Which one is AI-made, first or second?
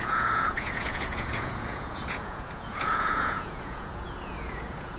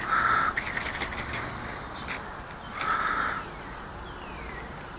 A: first